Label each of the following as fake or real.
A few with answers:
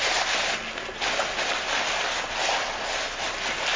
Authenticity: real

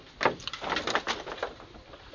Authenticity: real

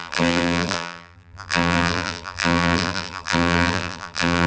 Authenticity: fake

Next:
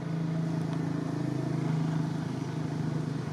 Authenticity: real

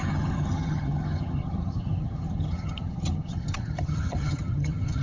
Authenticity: fake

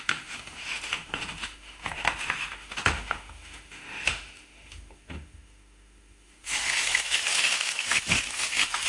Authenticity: fake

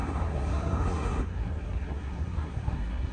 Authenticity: fake